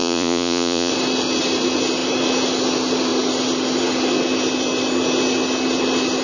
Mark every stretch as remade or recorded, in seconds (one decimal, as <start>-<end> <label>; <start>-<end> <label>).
0.0-0.9 remade; 0.9-6.2 recorded